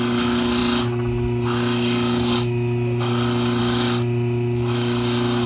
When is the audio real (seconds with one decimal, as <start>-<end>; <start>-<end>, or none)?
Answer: 0.0-5.5